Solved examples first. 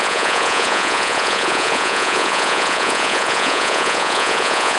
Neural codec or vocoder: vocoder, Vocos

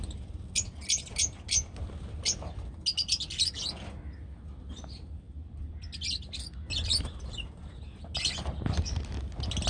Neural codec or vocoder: none